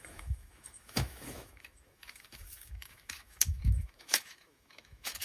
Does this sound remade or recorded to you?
remade